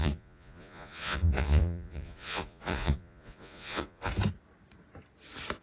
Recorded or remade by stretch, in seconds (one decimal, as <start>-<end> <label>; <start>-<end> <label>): 0.0-4.1 remade; 4.1-5.6 recorded